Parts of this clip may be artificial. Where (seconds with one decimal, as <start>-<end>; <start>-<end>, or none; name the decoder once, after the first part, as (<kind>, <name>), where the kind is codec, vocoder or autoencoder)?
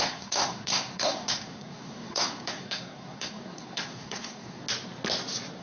0.0-4.6 (codec, SNAC)